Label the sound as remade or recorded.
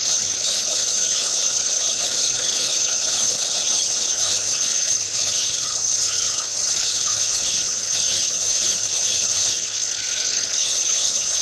remade